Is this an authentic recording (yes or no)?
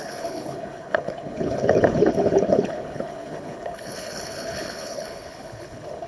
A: no